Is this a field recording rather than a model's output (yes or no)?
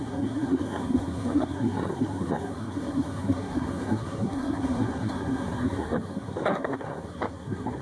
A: no